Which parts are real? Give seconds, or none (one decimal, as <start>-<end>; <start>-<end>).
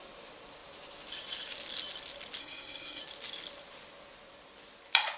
0.0-2.4; 3.0-5.2